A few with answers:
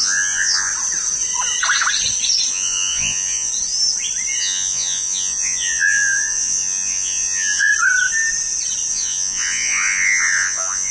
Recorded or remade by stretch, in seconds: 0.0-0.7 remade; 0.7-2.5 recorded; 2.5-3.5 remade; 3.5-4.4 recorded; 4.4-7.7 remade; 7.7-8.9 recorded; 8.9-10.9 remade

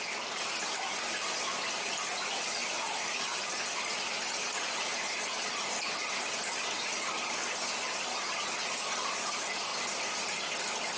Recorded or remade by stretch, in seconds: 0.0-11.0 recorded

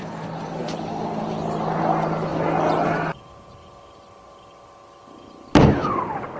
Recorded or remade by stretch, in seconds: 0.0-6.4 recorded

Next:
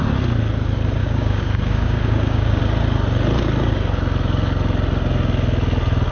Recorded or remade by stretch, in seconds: 0.0-1.0 recorded; 1.0-2.6 remade; 2.6-6.1 recorded